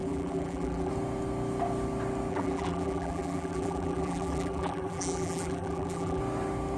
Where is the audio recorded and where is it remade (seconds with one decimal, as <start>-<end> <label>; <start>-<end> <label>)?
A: 0.0-0.9 remade; 0.9-2.3 recorded; 2.3-6.2 remade; 6.2-6.8 recorded